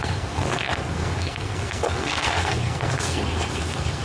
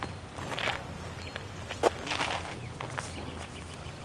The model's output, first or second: first